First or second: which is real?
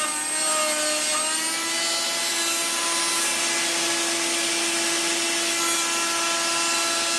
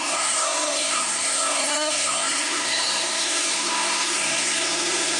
first